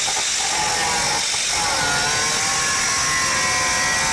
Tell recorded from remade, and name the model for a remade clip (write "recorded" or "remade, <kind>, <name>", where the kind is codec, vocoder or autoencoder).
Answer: recorded